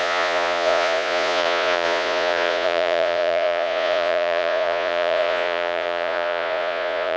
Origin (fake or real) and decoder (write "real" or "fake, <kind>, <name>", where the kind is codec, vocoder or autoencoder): fake, vocoder, Vocos